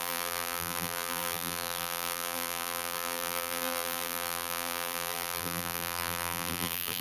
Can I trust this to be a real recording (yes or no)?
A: no